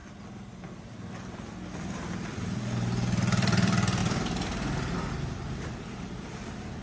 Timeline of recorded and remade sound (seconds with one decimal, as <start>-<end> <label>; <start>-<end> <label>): 0.0-0.9 recorded; 0.9-4.0 remade; 4.0-5.2 recorded; 5.2-6.8 remade